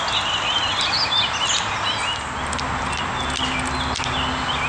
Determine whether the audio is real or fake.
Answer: real